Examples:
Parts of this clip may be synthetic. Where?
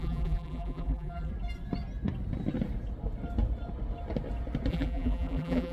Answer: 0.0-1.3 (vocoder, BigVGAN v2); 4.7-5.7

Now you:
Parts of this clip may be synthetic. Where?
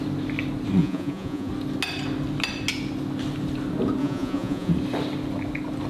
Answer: 0.8-1.5 (vocoder, Vocos); 4.0-4.7